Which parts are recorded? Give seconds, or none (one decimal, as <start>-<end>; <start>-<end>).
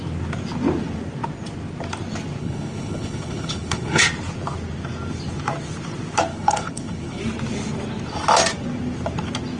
0.0-2.4; 4.0-6.3; 7.2-9.6